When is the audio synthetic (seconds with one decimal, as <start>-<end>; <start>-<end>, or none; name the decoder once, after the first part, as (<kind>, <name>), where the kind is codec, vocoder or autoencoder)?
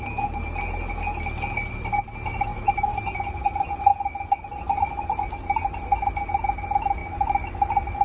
2.5-3.0 (autoencoder, DAC-VAE)